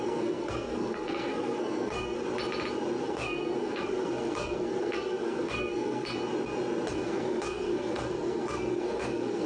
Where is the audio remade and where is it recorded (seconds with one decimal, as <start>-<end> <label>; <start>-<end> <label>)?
0.0-2.2 remade; 2.2-3.0 recorded; 3.0-6.2 remade; 6.2-6.9 recorded; 6.9-9.5 remade